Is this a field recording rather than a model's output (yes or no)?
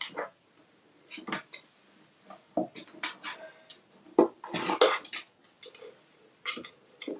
yes